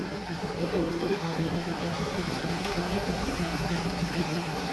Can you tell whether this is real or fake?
fake